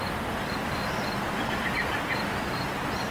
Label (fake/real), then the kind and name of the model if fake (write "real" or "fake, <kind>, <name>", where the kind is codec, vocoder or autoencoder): real